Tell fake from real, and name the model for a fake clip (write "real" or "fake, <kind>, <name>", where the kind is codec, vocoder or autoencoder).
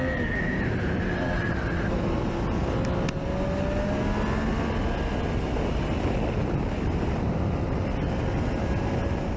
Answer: real